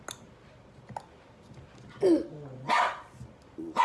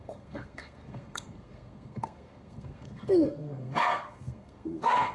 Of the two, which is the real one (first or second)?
first